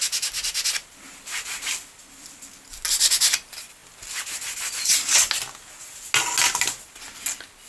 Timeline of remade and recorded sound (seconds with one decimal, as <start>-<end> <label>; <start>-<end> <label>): 0.0-7.7 recorded